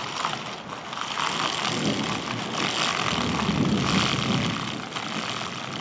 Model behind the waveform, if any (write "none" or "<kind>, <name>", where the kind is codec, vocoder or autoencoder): none